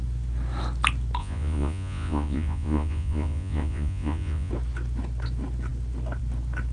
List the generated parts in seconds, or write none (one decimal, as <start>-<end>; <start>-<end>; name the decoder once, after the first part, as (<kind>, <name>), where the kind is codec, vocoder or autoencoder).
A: 1.2-4.5 (vocoder, Vocos)